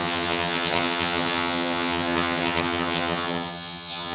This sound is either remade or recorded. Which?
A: remade